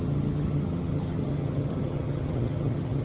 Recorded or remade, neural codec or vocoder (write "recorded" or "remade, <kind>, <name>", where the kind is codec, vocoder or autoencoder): remade, vocoder, HiFi-GAN